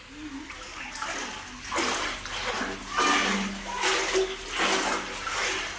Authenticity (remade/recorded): recorded